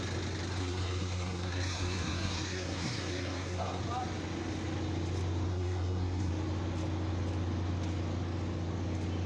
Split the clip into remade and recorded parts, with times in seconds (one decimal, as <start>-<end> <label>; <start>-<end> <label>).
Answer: 0.0-0.6 recorded; 0.6-3.8 remade; 3.8-5.5 recorded; 5.5-6.3 remade; 6.3-9.3 recorded